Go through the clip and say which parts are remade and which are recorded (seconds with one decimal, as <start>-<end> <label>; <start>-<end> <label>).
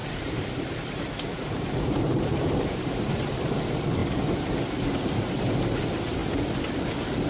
0.0-3.5 remade; 3.5-7.3 recorded